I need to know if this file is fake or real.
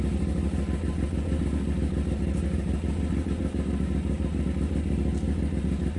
real